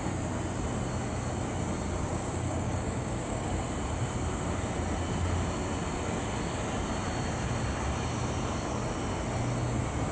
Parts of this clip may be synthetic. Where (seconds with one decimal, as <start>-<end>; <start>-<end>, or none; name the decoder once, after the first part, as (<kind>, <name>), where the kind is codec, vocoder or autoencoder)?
2.1-3.5 (codec, DAC)